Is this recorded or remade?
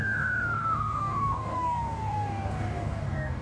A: remade